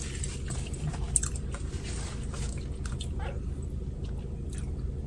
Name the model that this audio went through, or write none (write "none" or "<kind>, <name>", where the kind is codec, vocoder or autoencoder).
none